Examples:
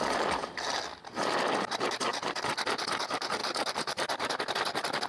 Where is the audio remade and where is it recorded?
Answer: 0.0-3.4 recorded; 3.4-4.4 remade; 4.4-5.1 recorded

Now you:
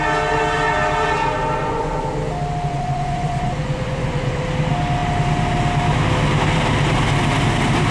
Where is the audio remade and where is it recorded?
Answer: 0.0-1.6 recorded; 1.6-2.1 remade; 2.1-2.7 recorded; 2.7-4.4 remade; 4.4-7.9 recorded

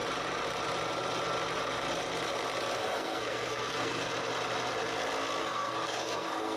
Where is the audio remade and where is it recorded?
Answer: 0.0-2.8 recorded; 2.8-4.1 remade; 4.1-5.4 recorded; 5.4-6.6 remade

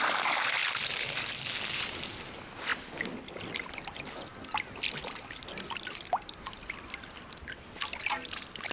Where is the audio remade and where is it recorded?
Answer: 0.0-8.7 recorded

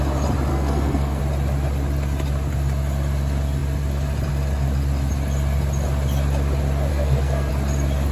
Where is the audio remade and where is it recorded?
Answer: 0.0-0.5 recorded; 0.5-1.2 remade; 1.2-6.9 recorded; 6.9-7.5 remade; 7.5-8.1 recorded

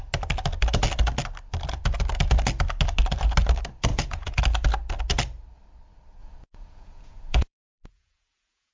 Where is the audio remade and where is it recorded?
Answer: 0.0-3.9 recorded; 3.9-4.4 remade; 4.4-6.2 recorded; 6.2-8.7 remade

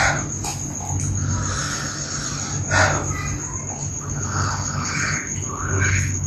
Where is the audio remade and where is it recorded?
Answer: 0.0-3.9 recorded; 3.9-6.3 remade